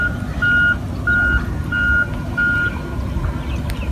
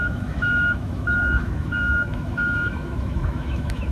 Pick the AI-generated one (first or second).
second